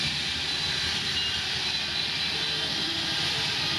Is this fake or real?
fake